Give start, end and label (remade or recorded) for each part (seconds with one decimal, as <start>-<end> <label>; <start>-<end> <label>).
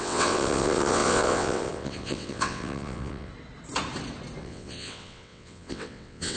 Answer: 0.0-3.3 remade; 3.3-4.4 recorded; 4.4-6.4 remade